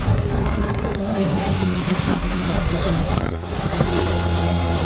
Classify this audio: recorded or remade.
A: remade